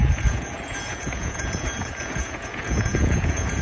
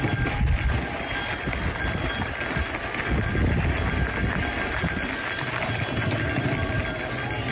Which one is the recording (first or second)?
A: second